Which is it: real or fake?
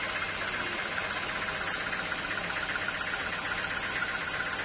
real